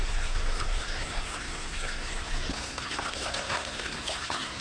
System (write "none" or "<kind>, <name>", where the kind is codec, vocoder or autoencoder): codec, SNAC